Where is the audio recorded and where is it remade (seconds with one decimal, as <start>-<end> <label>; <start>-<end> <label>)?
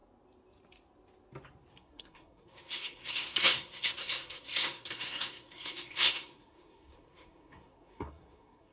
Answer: 0.0-1.7 recorded; 1.7-8.7 remade